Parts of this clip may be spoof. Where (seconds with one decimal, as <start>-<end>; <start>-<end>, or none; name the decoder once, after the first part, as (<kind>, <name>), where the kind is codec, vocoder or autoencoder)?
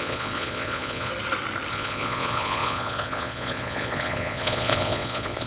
0.0-1.1 (vocoder, Vocos); 1.7-5.5